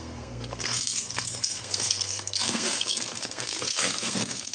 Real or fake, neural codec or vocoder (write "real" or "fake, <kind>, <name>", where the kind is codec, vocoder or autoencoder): fake, codec, SNAC